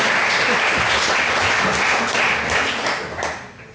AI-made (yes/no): no